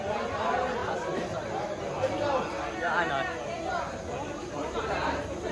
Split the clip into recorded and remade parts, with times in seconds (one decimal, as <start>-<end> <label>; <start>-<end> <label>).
0.0-0.8 recorded; 0.8-1.8 remade; 1.8-3.7 recorded; 3.7-5.5 remade